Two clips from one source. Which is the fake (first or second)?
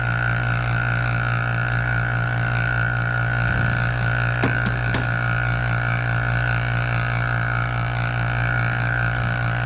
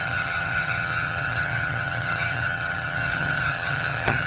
second